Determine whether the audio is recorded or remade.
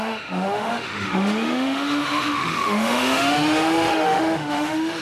remade